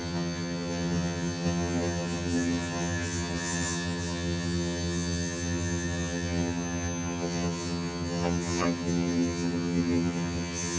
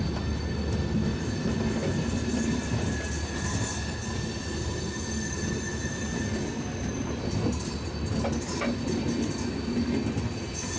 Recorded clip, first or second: second